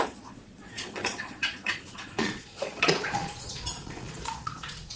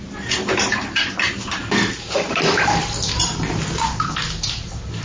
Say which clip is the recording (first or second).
second